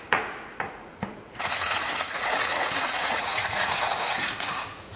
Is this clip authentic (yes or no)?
no